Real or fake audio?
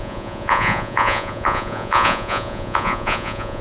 fake